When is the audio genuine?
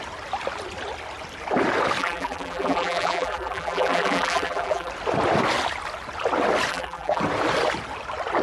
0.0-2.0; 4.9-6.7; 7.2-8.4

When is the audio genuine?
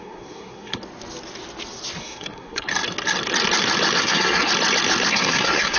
0.8-2.0; 2.7-4.0; 4.5-5.1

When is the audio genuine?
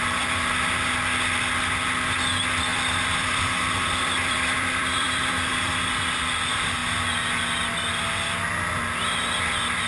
0.0-2.7; 5.8-9.9